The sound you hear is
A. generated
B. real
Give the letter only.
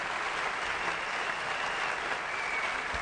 B